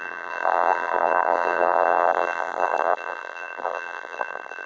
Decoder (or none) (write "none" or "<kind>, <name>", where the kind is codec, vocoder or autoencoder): vocoder, BigVGAN v2